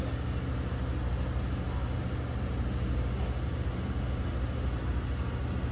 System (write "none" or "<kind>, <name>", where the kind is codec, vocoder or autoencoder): none